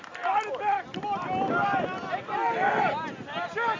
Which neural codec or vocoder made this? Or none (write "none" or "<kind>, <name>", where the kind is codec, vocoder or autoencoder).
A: none